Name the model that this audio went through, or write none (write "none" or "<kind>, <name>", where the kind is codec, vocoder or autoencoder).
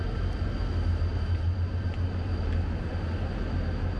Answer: none